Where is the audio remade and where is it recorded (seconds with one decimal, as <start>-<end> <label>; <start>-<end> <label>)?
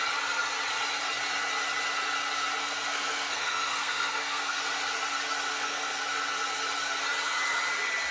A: 0.0-2.6 recorded; 2.6-4.6 remade; 4.6-5.5 recorded; 5.5-6.0 remade; 6.0-8.1 recorded